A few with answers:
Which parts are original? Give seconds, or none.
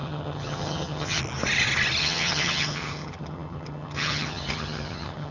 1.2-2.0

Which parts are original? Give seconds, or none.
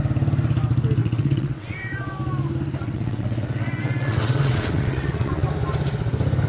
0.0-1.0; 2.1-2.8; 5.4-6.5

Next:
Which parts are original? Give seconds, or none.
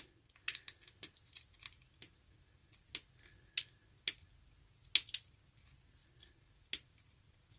0.0-7.6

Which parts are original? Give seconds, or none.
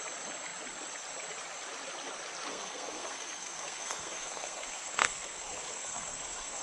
0.0-2.5